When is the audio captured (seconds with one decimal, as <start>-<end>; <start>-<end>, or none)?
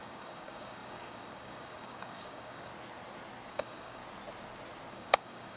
2.7-3.5; 4.0-4.9